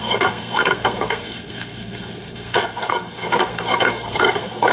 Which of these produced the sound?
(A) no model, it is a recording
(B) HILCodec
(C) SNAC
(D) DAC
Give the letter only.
C